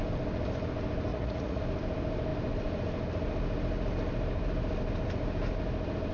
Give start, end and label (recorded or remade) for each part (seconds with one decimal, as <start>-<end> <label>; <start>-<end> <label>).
0.0-1.1 recorded; 1.1-1.6 remade; 1.6-6.1 recorded